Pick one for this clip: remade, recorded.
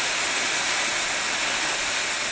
recorded